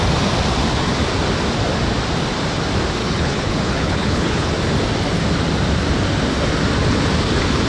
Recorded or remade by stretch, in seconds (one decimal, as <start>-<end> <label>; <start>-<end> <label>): 0.0-3.0 recorded; 3.0-4.5 remade; 4.5-7.7 recorded